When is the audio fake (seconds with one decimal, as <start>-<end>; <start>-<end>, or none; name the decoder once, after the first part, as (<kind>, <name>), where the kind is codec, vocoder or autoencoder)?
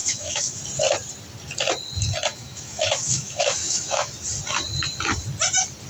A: 0.0-0.6 (autoencoder, DAC-VAE); 2.3-4.1